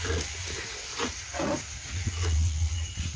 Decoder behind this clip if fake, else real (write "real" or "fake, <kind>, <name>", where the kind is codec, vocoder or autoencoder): fake, vocoder, Vocos